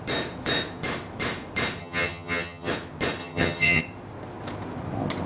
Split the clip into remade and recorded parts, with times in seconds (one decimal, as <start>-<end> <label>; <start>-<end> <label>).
0.0-1.8 recorded; 1.8-2.7 remade; 2.7-3.2 recorded; 3.2-3.8 remade; 3.8-5.3 recorded